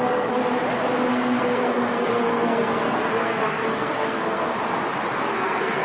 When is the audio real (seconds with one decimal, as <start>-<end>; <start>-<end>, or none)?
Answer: 0.4-1.1; 4.5-5.2